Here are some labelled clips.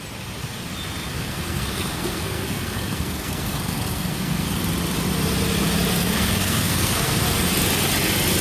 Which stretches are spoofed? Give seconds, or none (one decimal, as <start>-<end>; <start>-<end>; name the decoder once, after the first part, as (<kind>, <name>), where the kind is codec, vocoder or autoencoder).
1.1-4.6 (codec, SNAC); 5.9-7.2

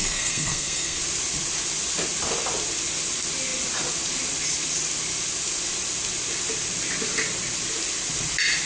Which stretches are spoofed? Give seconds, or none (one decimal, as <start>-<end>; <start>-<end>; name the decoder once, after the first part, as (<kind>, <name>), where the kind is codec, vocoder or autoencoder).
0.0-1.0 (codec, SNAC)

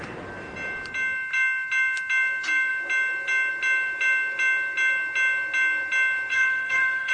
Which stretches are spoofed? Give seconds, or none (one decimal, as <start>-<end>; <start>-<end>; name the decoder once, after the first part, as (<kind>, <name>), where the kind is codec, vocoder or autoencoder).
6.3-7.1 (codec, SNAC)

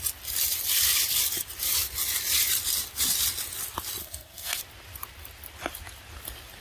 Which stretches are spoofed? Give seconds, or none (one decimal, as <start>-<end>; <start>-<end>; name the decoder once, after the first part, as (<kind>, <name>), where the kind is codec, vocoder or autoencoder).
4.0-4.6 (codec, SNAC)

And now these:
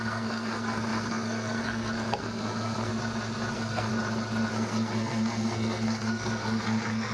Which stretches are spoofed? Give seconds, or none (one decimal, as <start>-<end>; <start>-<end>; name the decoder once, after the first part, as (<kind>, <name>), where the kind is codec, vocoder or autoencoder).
0.0-2.9 (codec, SNAC); 3.5-3.9; 4.5-7.1

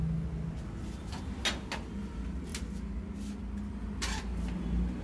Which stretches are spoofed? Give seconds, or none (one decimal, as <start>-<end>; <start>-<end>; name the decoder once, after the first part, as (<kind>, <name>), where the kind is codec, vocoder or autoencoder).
none